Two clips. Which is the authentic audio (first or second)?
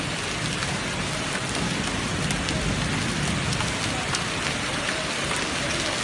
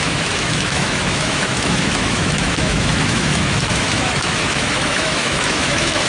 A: first